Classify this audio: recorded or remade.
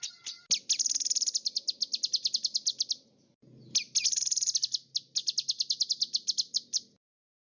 recorded